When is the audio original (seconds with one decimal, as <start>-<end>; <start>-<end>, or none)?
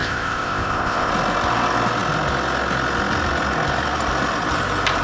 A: 1.1-5.0